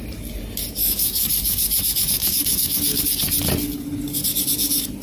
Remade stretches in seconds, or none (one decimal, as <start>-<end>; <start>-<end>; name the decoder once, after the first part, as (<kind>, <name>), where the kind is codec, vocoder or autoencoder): 0.8-3.0 (codec, DAC)